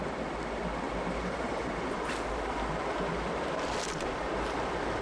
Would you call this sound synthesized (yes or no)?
no